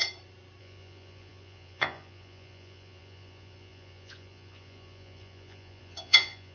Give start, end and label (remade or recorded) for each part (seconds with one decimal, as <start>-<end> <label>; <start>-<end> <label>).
0.0-0.6 recorded; 0.6-6.5 remade